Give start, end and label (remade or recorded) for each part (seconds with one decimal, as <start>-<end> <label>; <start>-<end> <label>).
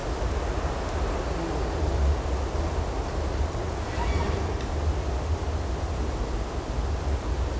0.0-7.6 recorded